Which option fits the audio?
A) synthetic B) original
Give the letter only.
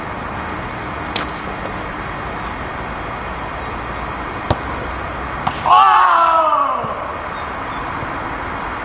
B